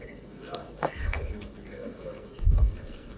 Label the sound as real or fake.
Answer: fake